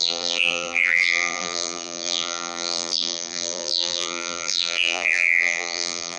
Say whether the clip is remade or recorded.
remade